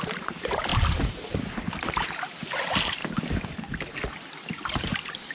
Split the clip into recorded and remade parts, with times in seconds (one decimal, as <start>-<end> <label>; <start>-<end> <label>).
0.0-0.7 remade; 0.7-1.9 recorded; 1.9-3.0 remade; 3.0-4.1 recorded; 4.1-5.3 remade

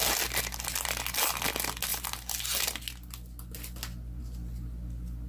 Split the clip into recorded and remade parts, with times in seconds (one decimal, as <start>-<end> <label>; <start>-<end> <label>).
0.0-5.3 recorded

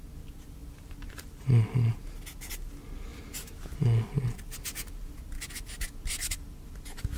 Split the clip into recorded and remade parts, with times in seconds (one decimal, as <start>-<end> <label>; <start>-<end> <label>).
0.0-7.2 recorded

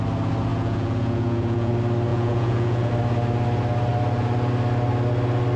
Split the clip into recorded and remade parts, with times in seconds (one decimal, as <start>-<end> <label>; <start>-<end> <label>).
0.0-0.5 recorded; 0.5-1.7 remade; 1.7-2.1 recorded; 2.1-2.9 remade; 2.9-5.6 recorded